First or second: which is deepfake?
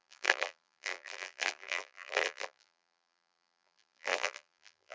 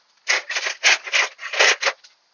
first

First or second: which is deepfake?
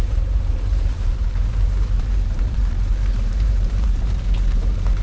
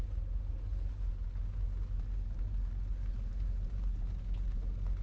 first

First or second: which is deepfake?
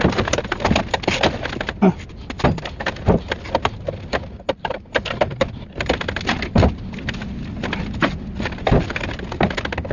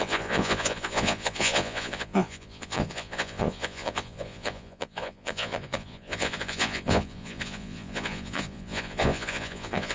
second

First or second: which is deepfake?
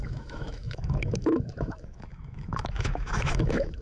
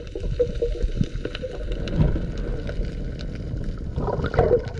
first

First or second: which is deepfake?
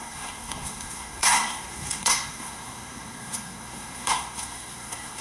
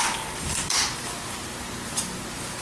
first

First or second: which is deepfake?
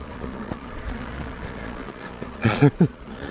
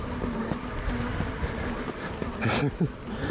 first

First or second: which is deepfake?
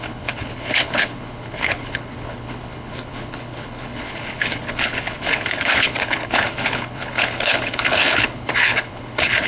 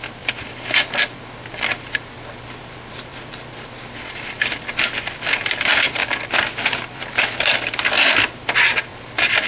first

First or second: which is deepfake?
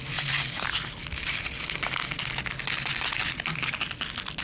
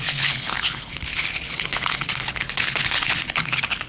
second